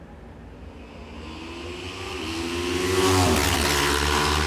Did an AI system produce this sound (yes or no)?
no